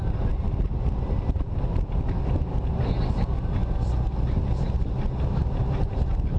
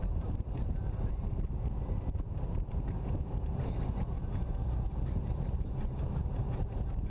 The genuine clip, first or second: first